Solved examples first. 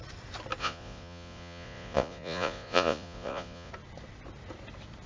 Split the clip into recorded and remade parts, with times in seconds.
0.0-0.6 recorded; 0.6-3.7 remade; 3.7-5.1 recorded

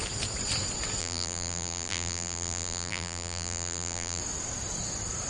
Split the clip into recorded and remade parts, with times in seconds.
0.0-1.0 recorded; 1.0-4.2 remade; 4.2-5.3 recorded

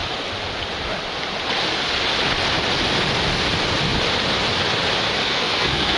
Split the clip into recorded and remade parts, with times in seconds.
0.0-5.2 recorded; 5.2-6.0 remade

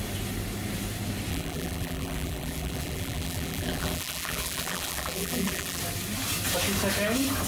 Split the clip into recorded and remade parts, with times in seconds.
0.0-1.3 recorded; 1.3-5.8 remade; 5.8-7.5 recorded

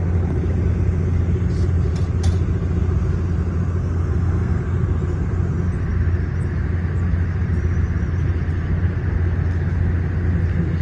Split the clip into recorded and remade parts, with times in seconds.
0.0-3.8 recorded; 3.8-4.6 remade; 4.6-10.8 recorded

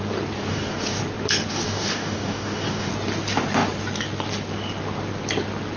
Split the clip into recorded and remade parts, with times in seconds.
0.0-0.5 recorded; 0.5-1.0 remade; 1.0-1.5 recorded; 1.5-2.9 remade; 2.9-5.8 recorded